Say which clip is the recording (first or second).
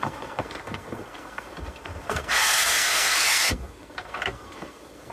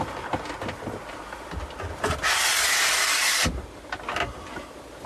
second